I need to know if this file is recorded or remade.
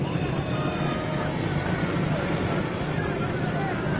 remade